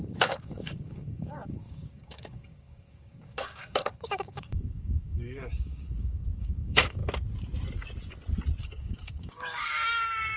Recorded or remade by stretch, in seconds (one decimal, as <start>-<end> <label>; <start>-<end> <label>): 0.0-7.0 remade; 7.0-8.6 recorded; 8.6-10.4 remade